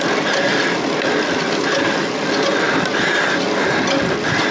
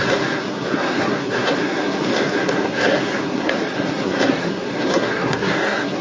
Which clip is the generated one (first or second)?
second